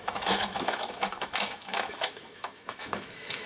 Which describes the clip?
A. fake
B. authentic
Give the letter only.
A